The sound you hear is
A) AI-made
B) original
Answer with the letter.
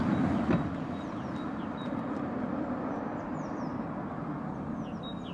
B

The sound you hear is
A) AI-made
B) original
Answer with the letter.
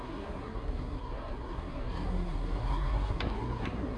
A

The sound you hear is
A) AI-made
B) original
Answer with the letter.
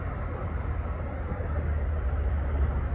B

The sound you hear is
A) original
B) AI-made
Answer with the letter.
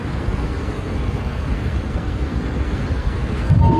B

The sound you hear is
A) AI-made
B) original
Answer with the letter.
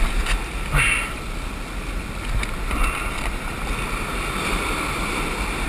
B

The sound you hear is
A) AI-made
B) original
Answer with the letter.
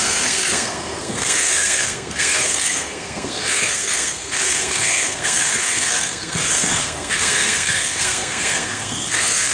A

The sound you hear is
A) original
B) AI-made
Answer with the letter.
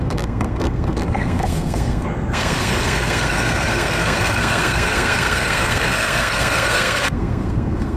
B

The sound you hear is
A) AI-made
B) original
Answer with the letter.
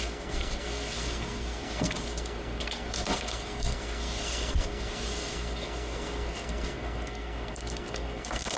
A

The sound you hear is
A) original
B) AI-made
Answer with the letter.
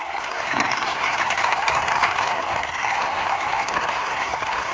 B